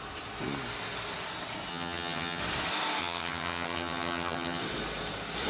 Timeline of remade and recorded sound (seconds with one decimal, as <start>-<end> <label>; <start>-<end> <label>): 0.0-1.7 recorded; 1.7-2.4 remade; 2.4-3.0 recorded; 3.0-4.6 remade; 4.6-5.5 recorded